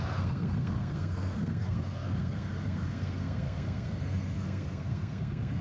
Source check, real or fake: fake